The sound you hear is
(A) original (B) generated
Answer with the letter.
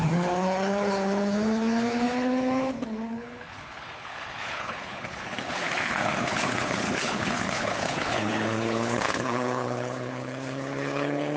B